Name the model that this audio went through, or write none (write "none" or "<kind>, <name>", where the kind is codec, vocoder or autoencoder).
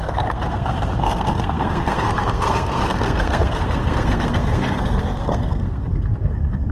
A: codec, SNAC